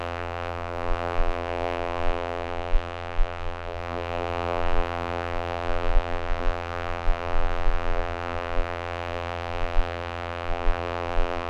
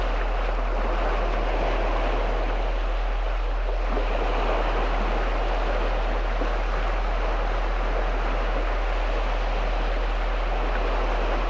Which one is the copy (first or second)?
first